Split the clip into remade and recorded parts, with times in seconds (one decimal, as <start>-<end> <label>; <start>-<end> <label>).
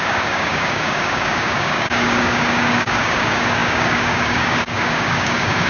0.0-5.7 remade